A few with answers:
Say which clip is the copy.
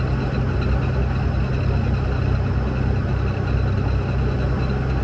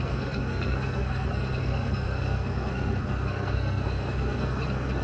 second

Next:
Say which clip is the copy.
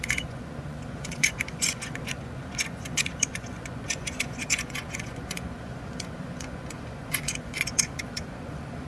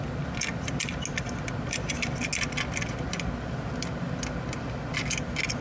first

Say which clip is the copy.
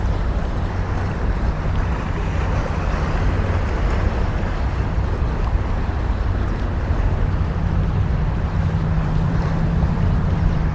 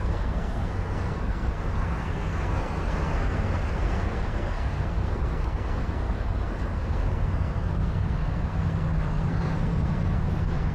second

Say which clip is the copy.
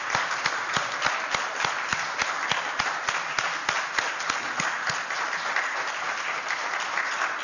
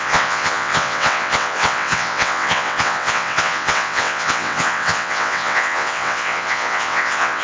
second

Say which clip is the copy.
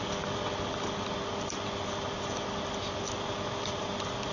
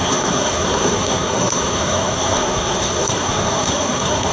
second